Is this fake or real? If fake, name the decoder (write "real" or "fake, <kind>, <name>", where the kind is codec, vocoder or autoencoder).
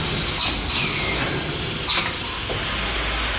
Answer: real